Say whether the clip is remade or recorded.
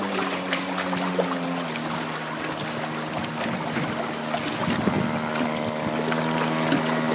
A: recorded